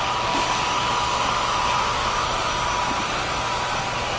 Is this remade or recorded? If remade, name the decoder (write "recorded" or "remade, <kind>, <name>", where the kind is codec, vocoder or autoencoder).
recorded